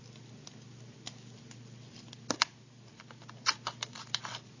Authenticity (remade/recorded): recorded